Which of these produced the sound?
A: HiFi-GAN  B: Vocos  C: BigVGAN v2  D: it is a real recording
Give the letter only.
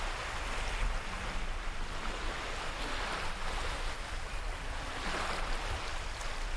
D